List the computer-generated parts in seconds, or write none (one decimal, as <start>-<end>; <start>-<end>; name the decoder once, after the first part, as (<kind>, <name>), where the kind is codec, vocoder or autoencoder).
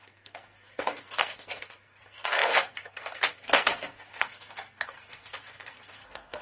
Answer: 0.0-6.4 (codec, SNAC)